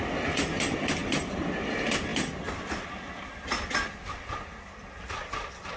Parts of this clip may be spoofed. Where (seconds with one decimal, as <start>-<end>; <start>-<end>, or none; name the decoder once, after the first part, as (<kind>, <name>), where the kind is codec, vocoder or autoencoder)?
none